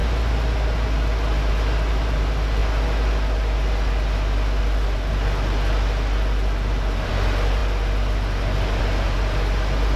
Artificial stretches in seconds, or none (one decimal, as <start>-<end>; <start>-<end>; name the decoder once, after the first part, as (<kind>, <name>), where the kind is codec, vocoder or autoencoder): none